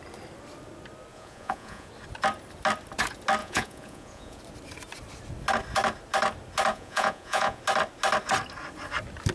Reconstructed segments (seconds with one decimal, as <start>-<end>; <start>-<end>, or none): 1.1-1.9; 3.4-4.4; 6.7-7.6